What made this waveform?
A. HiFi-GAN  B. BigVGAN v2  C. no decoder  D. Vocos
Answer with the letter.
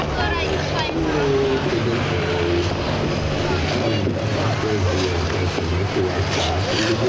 C